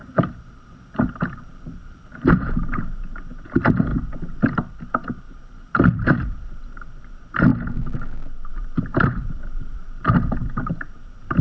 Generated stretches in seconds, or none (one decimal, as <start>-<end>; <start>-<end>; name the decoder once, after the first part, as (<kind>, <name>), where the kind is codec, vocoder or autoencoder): 0.0-3.9 (vocoder, BigVGAN v2); 5.2-7.5; 8.5-11.4